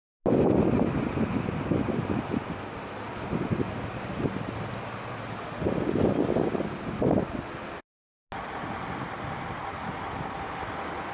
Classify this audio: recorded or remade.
recorded